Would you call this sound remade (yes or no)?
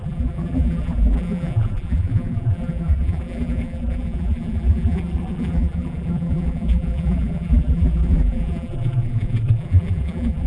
yes